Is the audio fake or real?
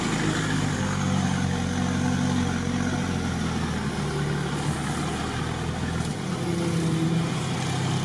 real